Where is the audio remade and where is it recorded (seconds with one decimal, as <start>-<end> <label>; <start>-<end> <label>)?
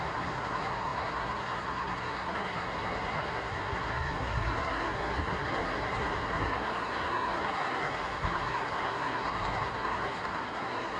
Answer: 0.0-11.0 remade